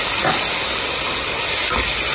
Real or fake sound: real